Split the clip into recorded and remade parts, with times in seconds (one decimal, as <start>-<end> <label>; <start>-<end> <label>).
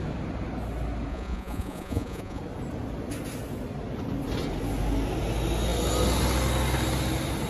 0.0-1.1 recorded; 1.1-2.4 remade; 2.4-7.5 recorded